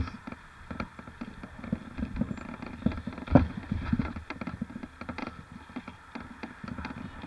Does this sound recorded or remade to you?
recorded